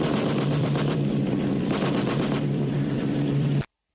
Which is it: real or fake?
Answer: fake